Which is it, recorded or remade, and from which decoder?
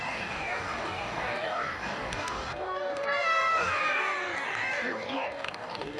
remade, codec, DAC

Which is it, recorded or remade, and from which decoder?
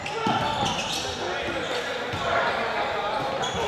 recorded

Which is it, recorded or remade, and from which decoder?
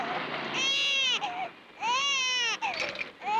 recorded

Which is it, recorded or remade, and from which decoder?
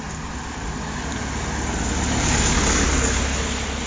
recorded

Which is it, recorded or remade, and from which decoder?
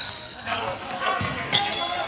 remade, codec, SNAC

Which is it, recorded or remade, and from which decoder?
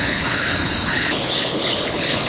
remade, codec, HILCodec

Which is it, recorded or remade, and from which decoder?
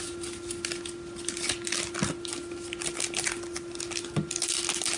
recorded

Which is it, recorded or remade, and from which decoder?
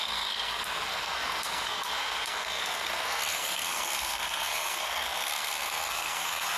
remade, codec, SNAC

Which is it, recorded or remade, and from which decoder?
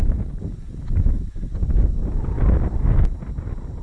recorded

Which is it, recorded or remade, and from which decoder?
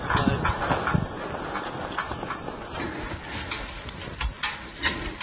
recorded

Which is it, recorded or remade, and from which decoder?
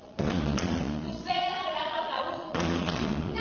remade, vocoder, Vocos